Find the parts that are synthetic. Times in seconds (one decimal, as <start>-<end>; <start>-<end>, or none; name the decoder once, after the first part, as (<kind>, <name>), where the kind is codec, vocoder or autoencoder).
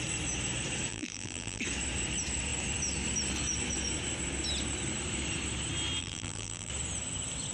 0.9-1.6 (vocoder, BigVGAN v2); 6.0-6.7